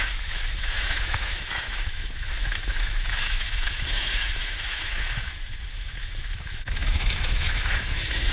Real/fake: fake